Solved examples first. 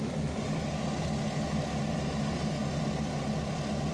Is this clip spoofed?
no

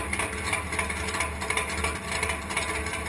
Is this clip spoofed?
no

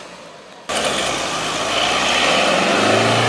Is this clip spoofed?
no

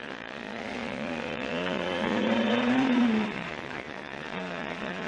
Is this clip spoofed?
yes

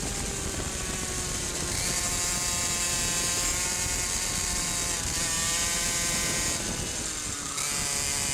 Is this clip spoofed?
no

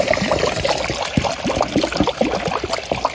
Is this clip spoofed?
no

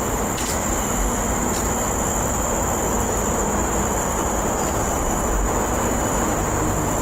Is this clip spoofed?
no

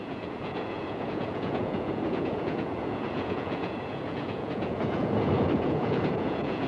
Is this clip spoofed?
yes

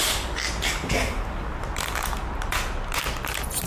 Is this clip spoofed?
no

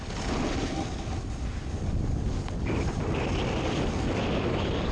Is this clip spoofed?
no